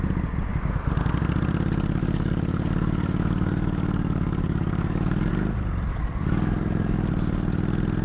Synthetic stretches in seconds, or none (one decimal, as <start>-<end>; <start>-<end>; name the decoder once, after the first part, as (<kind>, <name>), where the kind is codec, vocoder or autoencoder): 2.0-5.3 (codec, DAC); 5.9-7.1